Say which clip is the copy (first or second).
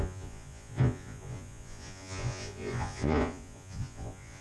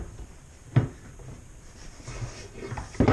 first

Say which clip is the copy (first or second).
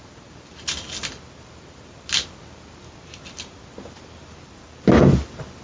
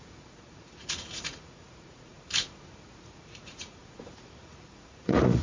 second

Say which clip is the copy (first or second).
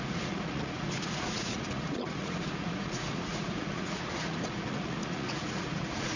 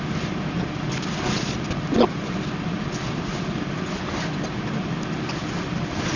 first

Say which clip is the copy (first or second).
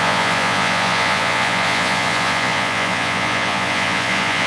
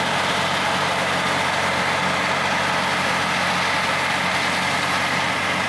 first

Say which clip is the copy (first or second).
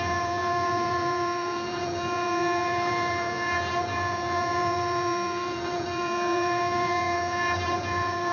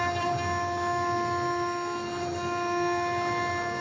first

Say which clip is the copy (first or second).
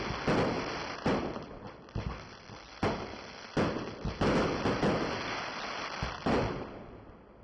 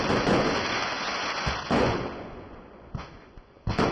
second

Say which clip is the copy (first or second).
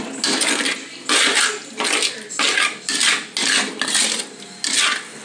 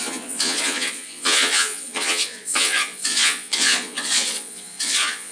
second